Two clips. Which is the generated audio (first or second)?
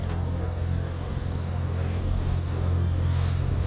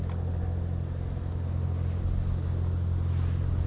first